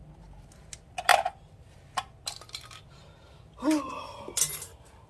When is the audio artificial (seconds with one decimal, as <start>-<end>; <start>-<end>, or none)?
none